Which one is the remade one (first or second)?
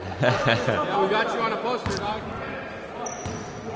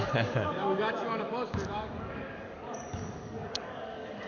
second